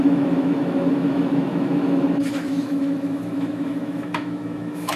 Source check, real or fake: fake